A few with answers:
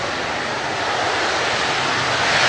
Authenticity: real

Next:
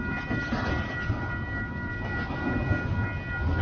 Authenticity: real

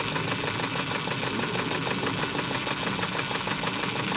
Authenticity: real